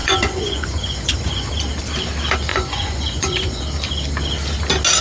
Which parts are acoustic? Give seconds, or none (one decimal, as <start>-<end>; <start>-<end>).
1.5-2.5; 3.6-5.0